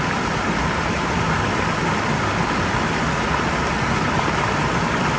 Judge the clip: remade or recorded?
recorded